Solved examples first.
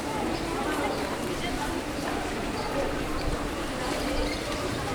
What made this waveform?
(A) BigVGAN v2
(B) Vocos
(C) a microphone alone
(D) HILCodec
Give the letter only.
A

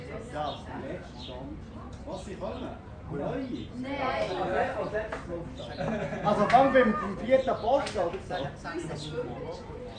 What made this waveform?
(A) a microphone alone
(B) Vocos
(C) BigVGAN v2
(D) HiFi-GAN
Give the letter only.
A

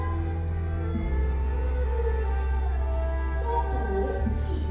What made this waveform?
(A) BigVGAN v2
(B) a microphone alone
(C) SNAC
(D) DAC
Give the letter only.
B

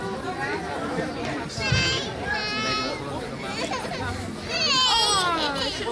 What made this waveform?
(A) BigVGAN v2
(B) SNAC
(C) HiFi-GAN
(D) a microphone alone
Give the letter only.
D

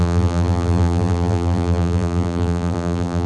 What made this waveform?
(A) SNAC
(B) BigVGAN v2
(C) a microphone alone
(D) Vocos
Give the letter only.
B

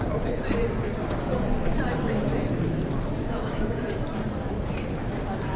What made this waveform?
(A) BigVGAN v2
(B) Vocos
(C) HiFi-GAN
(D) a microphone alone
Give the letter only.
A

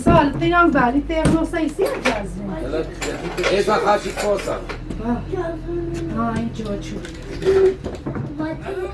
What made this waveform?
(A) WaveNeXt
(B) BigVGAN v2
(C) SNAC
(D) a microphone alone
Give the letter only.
D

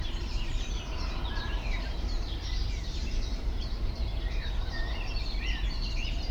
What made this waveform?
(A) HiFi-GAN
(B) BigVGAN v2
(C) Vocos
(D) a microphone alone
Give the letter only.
B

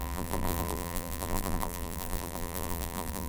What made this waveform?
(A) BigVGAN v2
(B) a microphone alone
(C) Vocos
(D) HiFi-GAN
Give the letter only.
A